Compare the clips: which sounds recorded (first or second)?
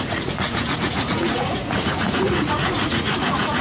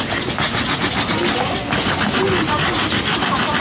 second